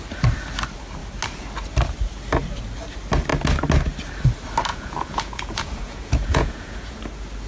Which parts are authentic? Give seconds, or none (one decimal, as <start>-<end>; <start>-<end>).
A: 0.0-4.7; 7.0-7.5